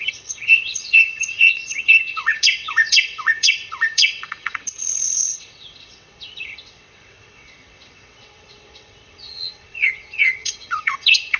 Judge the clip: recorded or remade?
remade